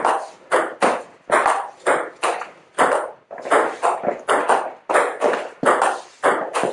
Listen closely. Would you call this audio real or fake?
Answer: real